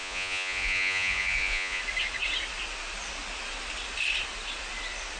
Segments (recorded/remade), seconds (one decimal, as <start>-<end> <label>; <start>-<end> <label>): 0.0-1.8 remade; 1.8-5.2 recorded